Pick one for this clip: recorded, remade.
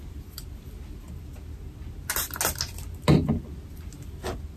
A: recorded